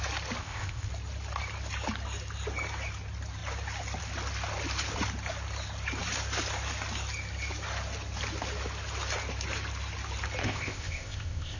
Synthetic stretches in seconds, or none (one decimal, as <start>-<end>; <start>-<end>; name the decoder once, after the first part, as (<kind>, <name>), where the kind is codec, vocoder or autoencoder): 0.4-0.9 (codec, ZipCodec); 10.4-11.6